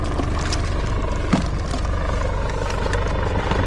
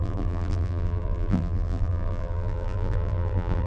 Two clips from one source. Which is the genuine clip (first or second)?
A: first